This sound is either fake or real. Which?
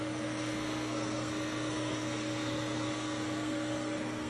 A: fake